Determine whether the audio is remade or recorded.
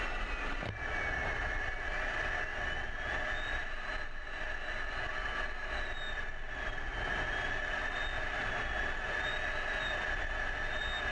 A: recorded